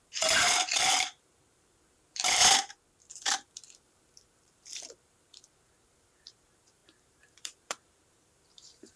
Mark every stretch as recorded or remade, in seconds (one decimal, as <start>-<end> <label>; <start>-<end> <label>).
0.0-2.4 remade; 2.4-3.1 recorded; 3.1-9.0 remade